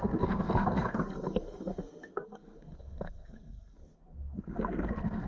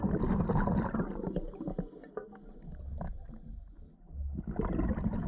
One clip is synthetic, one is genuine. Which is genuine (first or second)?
second